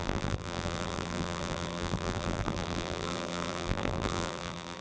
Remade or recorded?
remade